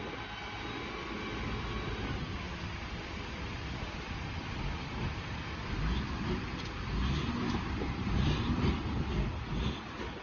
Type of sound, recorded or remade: recorded